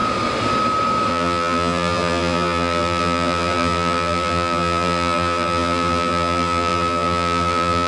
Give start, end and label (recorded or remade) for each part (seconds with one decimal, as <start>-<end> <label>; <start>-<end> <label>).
0.0-1.1 recorded; 1.1-7.9 remade